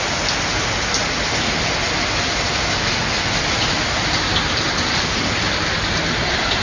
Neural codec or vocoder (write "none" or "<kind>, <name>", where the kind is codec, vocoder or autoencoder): none